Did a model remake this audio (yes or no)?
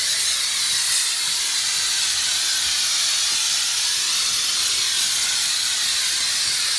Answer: no